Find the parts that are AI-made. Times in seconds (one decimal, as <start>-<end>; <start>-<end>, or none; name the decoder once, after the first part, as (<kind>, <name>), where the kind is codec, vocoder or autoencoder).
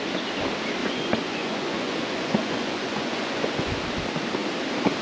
0.8-3.8 (vocoder, Vocos)